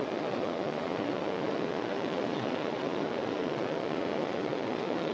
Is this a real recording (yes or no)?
no